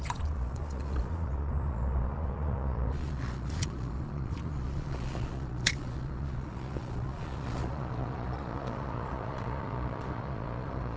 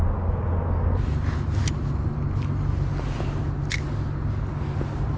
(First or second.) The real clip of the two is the second